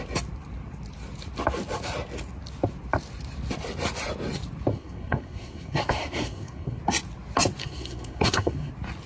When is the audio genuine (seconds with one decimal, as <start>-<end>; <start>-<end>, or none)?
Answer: 0.0-4.7; 6.8-7.6; 8.7-9.1